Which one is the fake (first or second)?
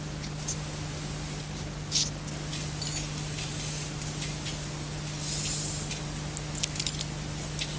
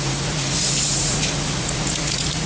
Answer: second